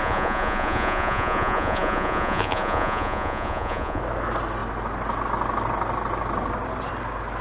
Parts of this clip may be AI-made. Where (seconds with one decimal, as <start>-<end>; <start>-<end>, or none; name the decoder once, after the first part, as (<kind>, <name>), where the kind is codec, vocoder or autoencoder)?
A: 0.0-4.0 (vocoder, Vocos)